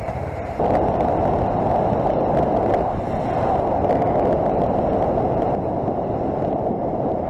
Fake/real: real